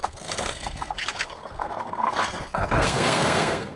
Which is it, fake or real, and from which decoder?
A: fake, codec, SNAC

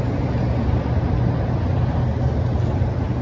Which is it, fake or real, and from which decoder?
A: real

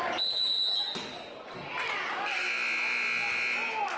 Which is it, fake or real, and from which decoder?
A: real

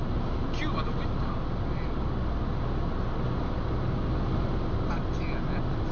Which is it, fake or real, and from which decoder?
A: real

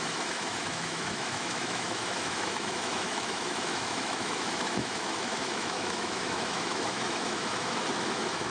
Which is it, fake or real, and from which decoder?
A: fake, autoencoder, DAC-VAE